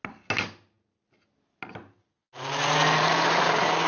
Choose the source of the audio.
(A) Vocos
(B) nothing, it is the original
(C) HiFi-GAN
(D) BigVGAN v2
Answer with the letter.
B